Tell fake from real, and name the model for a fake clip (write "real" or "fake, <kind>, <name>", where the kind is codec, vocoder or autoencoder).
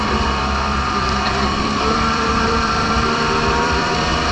fake, vocoder, BigVGAN v2